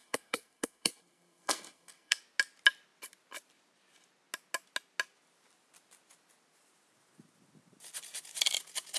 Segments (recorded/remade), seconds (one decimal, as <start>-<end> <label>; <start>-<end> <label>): 0.0-2.2 remade; 2.2-9.0 recorded